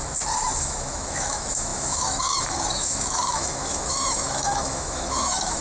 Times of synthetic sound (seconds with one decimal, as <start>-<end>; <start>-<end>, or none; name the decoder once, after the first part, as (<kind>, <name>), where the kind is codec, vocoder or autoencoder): 0.6-5.6 (autoencoder, DAC-VAE)